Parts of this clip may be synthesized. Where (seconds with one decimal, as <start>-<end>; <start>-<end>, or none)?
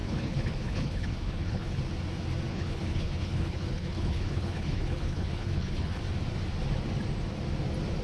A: 0.0-1.8; 2.5-6.0